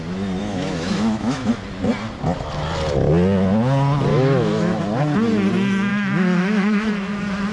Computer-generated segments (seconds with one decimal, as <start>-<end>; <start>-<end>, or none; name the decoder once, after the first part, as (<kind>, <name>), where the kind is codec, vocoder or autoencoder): 0.4-1.5 (autoencoder, DAC-VAE); 4.1-4.8; 5.9-6.9